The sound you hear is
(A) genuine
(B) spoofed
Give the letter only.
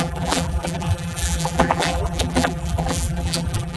B